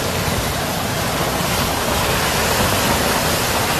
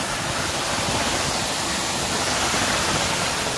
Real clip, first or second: first